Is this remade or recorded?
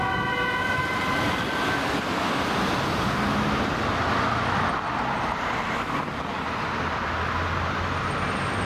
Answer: recorded